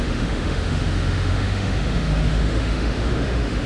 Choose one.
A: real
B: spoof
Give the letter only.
B